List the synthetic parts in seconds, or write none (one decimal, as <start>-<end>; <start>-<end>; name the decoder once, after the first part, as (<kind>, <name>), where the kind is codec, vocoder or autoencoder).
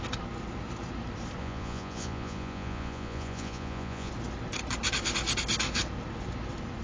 1.4-4.1 (vocoder, Vocos)